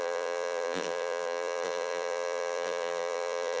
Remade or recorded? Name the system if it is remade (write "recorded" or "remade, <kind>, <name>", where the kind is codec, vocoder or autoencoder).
remade, vocoder, BigVGAN v2